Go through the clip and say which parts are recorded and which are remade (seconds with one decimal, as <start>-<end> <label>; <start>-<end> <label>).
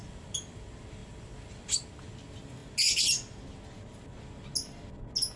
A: 0.0-5.4 recorded